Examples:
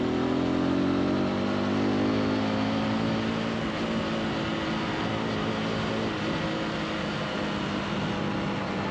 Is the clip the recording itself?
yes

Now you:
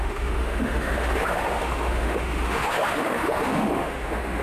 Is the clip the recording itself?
no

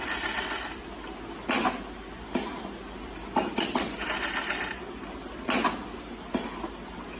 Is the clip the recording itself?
yes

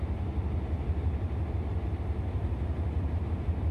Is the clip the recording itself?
yes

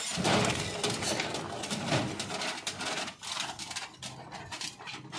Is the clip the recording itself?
yes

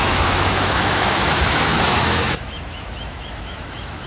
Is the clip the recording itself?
no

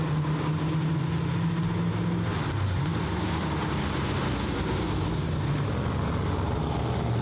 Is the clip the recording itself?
yes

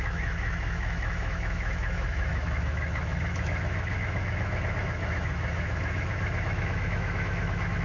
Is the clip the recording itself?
no